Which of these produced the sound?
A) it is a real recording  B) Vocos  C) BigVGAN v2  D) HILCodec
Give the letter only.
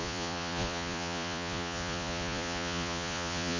B